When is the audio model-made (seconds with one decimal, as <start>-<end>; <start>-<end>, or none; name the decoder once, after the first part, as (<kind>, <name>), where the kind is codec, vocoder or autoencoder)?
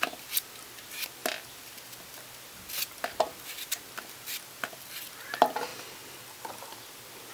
none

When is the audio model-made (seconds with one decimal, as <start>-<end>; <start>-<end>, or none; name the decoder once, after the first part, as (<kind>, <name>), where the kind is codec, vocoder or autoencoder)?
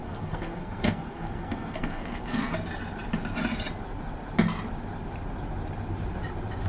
0.0-2.5 (codec, SNAC)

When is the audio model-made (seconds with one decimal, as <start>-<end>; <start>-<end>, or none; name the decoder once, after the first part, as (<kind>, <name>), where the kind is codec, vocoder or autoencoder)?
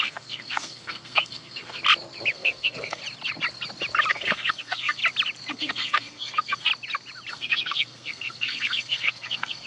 0.0-1.8 (codec, SNAC); 2.3-3.0; 4.1-5.0; 5.5-6.7; 7.3-9.7